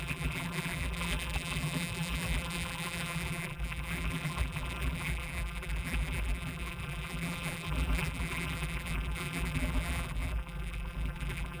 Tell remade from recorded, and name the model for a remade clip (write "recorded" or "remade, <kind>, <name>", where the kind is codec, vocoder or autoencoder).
remade, vocoder, BigVGAN v2